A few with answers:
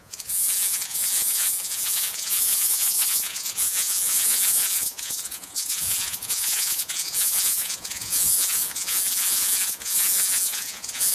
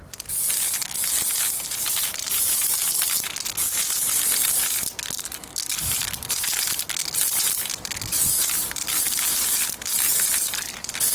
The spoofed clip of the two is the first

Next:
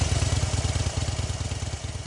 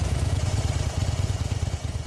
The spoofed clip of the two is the second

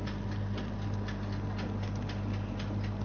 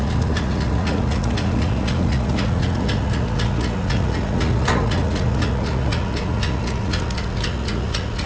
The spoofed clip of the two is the second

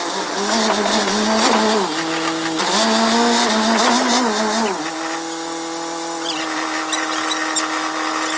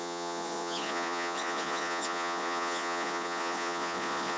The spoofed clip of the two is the second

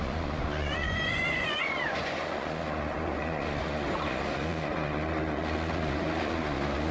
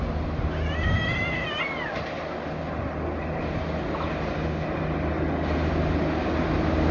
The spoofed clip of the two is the first